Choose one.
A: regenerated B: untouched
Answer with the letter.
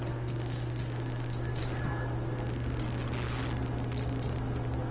B